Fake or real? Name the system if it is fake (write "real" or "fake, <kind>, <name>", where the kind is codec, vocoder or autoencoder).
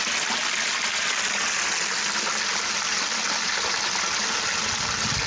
real